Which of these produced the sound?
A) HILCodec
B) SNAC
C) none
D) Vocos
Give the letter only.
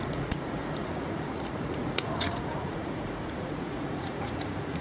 D